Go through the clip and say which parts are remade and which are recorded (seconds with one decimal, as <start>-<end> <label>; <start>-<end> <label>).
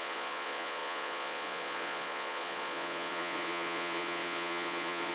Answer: 0.0-5.1 remade